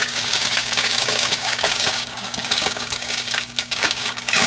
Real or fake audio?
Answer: fake